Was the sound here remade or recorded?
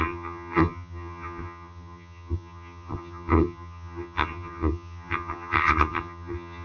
remade